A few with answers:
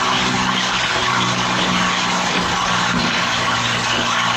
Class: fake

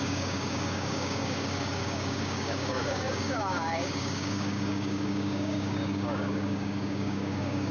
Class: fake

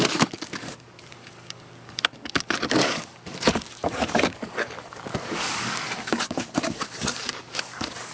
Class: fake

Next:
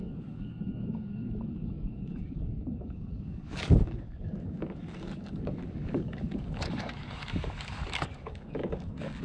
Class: fake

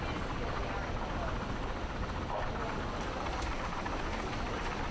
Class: real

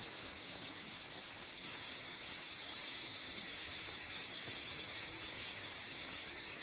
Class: fake